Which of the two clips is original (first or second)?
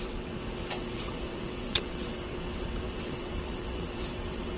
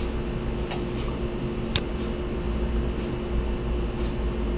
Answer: second